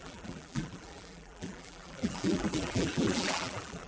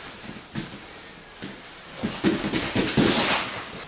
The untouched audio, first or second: second